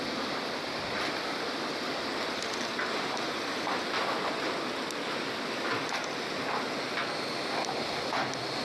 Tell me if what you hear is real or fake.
real